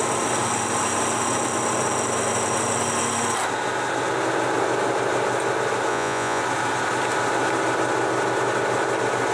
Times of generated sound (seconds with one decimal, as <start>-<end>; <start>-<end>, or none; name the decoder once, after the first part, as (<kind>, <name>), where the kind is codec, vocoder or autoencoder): 5.9-6.4 (vocoder, Vocos)